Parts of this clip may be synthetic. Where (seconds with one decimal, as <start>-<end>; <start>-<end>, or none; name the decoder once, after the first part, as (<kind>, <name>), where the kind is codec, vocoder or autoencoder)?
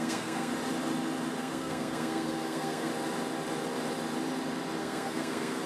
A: 0.0-0.5 (codec, SNAC); 1.4-2.9; 4.8-5.7